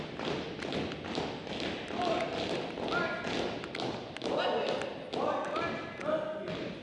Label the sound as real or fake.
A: real